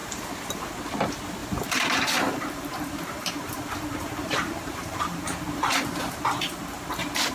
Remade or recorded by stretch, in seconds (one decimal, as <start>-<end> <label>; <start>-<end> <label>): 0.0-0.7 remade; 0.7-1.4 recorded; 1.4-5.8 remade; 5.8-7.3 recorded